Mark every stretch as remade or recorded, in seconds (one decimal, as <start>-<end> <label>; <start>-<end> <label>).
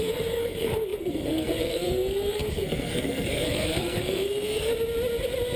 0.0-4.7 remade; 4.7-5.6 recorded